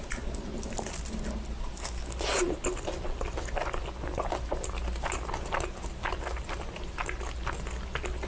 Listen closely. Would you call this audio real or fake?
real